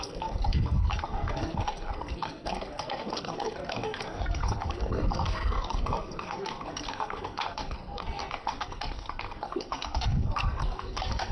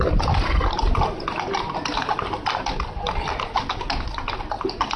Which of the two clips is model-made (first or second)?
first